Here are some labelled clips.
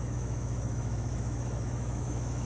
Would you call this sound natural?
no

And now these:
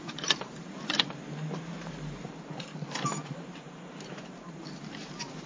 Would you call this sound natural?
no